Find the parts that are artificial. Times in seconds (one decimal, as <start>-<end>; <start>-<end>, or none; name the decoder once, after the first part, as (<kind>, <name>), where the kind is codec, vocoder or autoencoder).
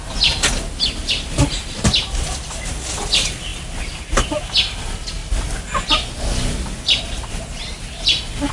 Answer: none